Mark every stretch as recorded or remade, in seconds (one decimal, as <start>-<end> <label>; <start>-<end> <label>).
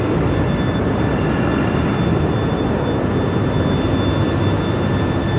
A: 0.0-5.4 recorded